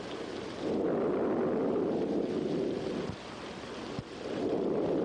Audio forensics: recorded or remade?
recorded